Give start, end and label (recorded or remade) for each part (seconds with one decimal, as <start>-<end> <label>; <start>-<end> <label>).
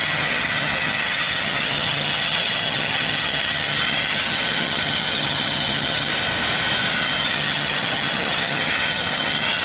0.0-6.1 remade; 6.1-7.0 recorded; 7.0-9.6 remade